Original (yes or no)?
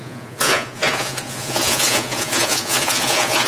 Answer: no